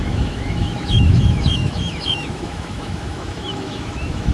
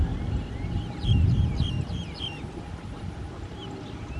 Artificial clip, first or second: first